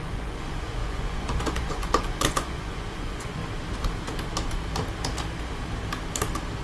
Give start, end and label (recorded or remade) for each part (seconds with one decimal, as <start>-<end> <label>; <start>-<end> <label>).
0.0-3.4 remade; 3.4-6.6 recorded